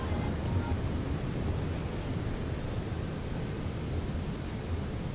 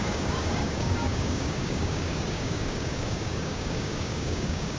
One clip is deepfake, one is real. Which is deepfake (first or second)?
second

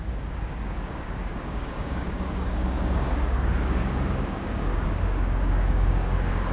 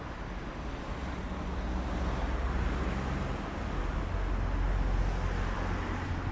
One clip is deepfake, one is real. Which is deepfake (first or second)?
first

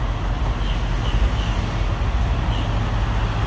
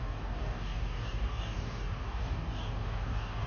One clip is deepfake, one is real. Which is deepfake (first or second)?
second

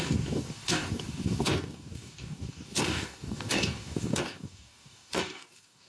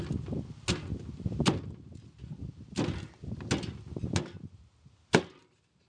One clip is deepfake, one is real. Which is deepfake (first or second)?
first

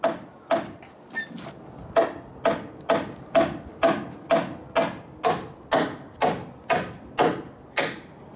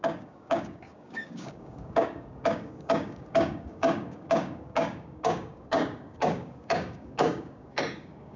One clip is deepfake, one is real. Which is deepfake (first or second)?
second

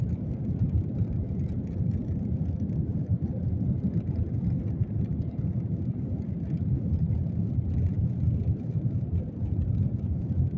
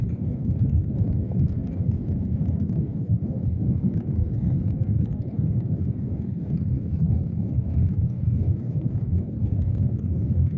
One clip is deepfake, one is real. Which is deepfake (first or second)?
second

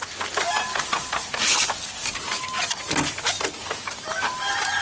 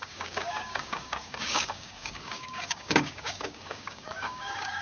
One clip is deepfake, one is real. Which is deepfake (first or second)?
second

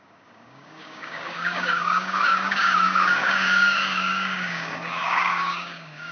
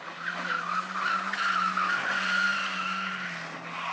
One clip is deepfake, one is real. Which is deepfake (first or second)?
first